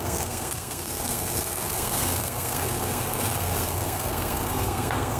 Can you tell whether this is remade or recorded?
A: remade